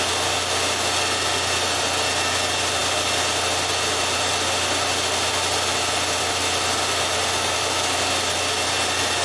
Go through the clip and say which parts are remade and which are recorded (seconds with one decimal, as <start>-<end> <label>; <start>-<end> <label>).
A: 0.0-9.2 recorded